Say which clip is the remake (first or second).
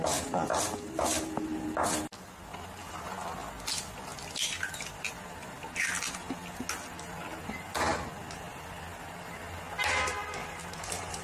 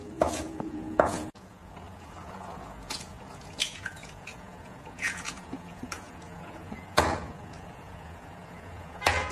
second